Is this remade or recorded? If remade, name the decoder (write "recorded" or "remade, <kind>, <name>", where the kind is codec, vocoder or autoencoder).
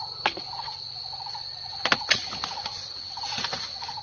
recorded